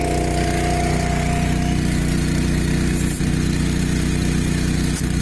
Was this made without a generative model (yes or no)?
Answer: yes